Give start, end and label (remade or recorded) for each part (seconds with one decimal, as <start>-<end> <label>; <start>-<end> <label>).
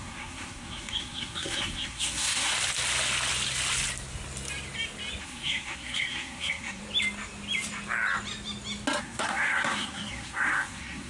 0.0-2.5 remade; 2.5-5.2 recorded; 5.2-6.8 remade; 6.8-9.0 recorded; 9.0-11.1 remade